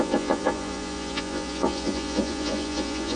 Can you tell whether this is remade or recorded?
remade